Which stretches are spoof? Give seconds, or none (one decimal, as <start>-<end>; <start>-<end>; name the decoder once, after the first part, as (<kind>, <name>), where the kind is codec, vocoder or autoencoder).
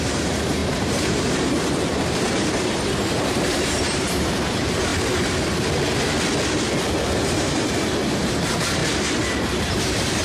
0.0-4.9 (vocoder, BigVGAN v2); 7.2-8.8; 9.6-10.2